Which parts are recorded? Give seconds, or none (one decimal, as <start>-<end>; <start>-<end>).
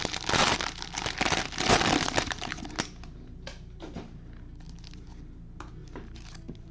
0.0-6.7